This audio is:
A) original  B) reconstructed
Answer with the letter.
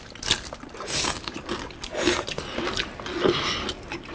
A